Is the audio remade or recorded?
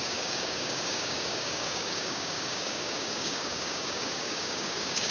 remade